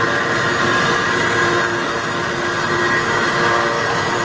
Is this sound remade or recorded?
recorded